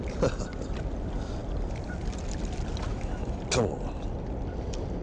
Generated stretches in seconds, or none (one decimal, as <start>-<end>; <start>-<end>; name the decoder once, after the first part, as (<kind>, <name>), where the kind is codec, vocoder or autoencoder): 2.9-3.4 (autoencoder, DAC-VAE)